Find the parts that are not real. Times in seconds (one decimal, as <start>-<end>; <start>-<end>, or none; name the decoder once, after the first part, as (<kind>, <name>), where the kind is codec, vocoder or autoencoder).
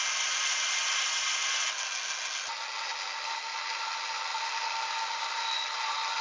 none